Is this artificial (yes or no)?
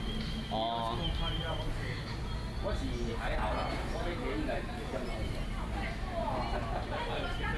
no